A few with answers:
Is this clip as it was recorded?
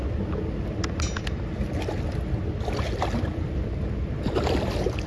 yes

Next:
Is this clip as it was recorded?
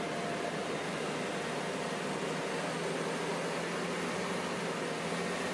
yes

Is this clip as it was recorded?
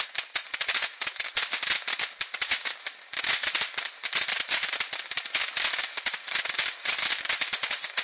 yes